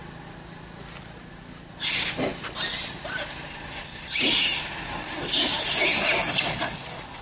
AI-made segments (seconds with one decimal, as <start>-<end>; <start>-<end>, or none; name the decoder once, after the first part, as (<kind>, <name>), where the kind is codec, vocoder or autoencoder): none